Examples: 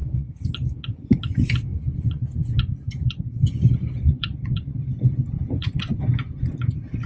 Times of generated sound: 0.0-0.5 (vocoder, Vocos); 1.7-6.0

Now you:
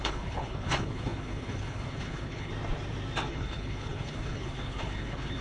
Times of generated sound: 0.0-2.5 (codec, HILCodec); 3.3-5.4

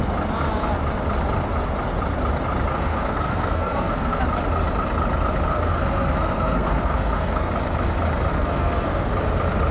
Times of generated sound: 2.7-4.2 (codec, SNAC); 5.5-7.5; 8.3-9.1